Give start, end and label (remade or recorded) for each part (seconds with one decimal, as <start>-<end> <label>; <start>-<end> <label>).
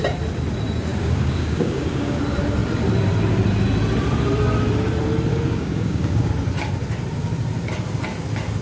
0.0-0.9 recorded; 0.9-2.2 remade; 2.2-5.3 recorded; 5.3-6.3 remade; 6.3-8.6 recorded